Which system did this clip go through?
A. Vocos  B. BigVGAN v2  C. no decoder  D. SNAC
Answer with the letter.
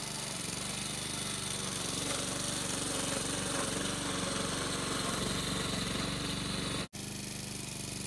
C